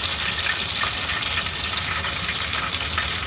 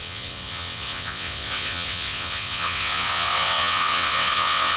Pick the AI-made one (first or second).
second